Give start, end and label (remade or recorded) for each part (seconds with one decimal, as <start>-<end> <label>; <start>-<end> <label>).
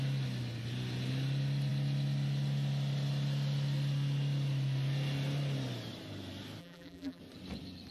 0.0-6.6 recorded; 6.6-7.2 remade; 7.2-7.9 recorded